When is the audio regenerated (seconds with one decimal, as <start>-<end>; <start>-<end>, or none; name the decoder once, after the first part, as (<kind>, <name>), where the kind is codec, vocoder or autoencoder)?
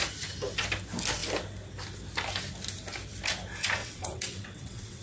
3.8-5.0 (vocoder, WaveNeXt)